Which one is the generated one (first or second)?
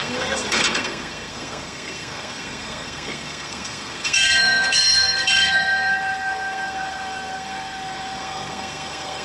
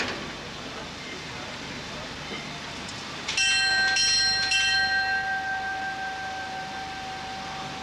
first